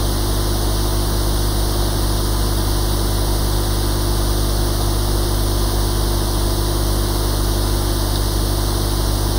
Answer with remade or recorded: recorded